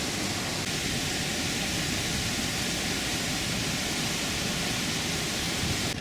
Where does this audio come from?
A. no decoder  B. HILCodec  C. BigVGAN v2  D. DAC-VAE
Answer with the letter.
A